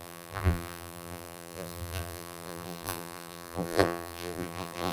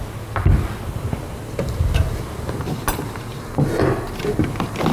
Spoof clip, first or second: first